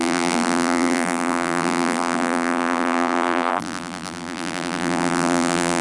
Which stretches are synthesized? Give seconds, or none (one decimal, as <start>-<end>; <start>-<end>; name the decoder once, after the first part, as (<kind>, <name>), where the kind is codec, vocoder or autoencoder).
0.0-5.8 (vocoder, BigVGAN v2)